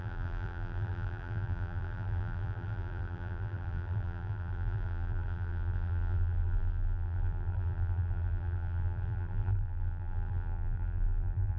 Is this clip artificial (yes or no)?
yes